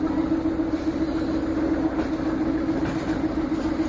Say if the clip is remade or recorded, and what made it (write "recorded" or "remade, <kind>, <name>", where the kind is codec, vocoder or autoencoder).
recorded